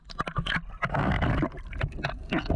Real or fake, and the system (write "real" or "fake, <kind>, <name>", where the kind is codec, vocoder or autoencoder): real